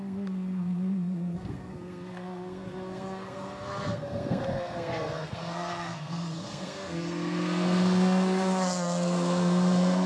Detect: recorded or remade remade